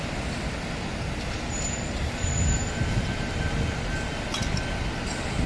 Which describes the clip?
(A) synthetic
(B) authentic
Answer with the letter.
B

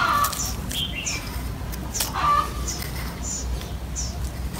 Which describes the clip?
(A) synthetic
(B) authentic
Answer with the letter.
B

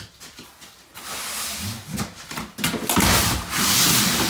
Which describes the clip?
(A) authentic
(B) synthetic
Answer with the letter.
A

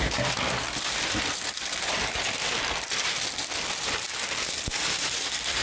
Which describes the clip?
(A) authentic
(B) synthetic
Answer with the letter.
B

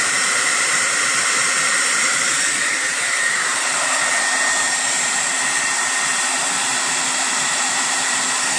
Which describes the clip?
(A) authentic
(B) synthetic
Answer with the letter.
B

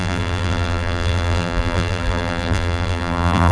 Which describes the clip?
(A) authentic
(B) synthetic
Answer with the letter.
B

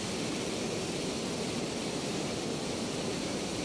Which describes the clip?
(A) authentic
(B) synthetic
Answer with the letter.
A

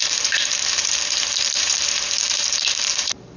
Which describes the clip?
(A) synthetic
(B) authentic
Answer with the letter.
A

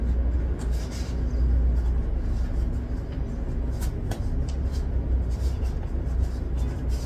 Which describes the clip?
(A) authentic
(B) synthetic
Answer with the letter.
A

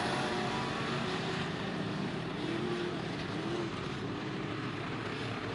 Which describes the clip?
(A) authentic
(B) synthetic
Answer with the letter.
B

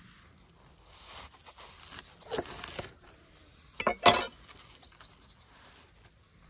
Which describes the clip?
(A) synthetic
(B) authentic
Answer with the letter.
B